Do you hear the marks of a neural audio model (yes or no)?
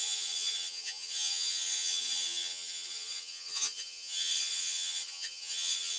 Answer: yes